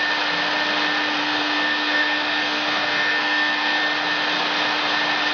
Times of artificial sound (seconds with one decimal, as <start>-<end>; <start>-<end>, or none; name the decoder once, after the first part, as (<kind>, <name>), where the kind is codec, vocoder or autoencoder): 1.2-3.8 (codec, SNAC)